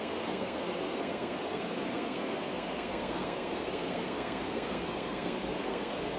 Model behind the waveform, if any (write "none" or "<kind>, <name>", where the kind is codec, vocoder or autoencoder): codec, SNAC